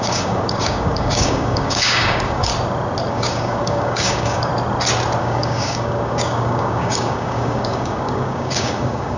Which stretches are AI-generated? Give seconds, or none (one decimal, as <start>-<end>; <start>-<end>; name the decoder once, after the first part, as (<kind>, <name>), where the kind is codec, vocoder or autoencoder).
0.0-2.5 (codec, DAC); 3.1-4.5; 5.2-9.2